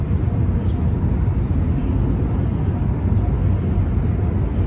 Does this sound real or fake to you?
real